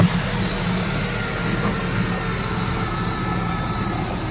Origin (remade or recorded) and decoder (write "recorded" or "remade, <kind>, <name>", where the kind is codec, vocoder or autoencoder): recorded